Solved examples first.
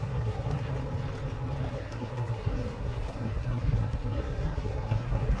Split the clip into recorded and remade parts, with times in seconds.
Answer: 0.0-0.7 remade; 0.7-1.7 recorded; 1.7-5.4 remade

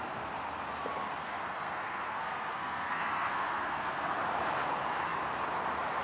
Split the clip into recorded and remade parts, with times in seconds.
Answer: 0.0-1.2 recorded; 1.2-4.1 remade; 4.1-6.0 recorded

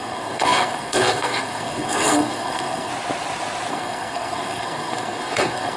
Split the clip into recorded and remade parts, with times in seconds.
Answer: 0.0-2.9 remade; 2.9-3.7 recorded; 3.7-5.8 remade

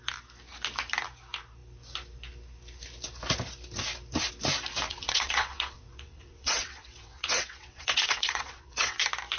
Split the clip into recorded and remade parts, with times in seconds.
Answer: 0.0-4.9 recorded; 4.9-9.0 remade; 9.0-9.4 recorded